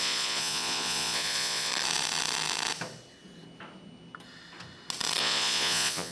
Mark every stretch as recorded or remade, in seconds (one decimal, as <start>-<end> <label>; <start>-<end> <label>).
0.0-1.7 remade; 1.7-5.2 recorded; 5.2-6.1 remade